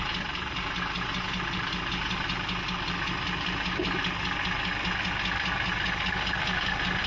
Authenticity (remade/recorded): recorded